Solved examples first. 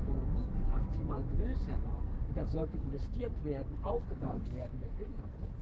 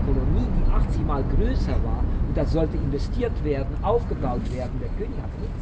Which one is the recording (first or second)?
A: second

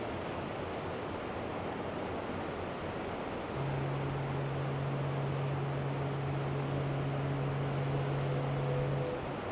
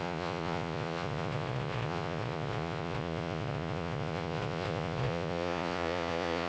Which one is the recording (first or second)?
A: first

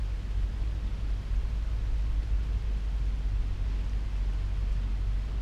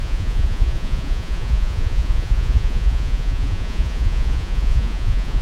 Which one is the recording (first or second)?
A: first